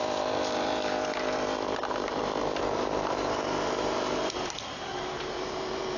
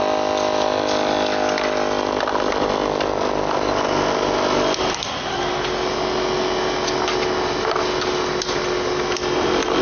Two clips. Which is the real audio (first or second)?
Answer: second